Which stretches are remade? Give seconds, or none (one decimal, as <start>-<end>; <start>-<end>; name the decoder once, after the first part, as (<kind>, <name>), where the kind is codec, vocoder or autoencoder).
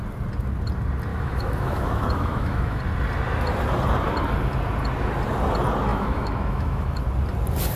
1.1-2.8 (autoencoder, DAC-VAE); 5.9-7.0